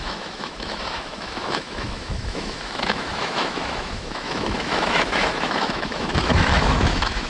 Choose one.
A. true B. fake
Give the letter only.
B